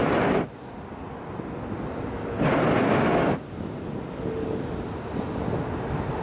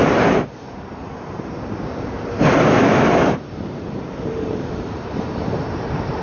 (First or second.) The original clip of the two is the first